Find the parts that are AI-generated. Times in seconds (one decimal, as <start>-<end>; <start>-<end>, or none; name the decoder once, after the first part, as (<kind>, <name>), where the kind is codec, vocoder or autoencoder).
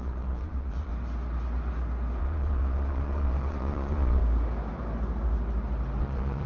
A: 0.0-0.9 (vocoder, Vocos); 2.2-4.2; 6.0-6.5